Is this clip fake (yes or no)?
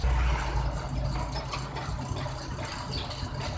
no